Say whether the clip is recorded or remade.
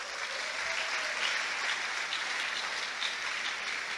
recorded